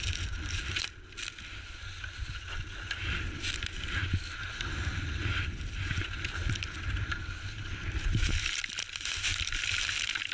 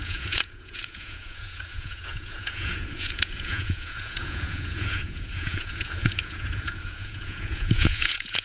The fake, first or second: second